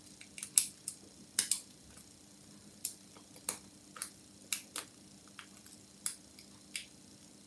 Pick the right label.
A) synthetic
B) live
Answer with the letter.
B